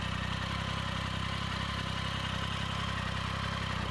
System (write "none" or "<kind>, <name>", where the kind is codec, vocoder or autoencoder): none